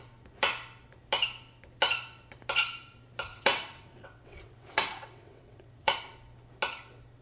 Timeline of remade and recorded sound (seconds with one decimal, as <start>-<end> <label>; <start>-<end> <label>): 0.0-3.3 recorded; 3.3-6.0 remade; 6.0-7.2 recorded